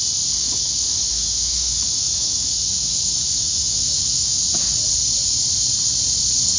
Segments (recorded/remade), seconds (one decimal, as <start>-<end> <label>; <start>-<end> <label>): 0.0-0.4 recorded; 0.4-4.4 remade; 4.4-6.6 recorded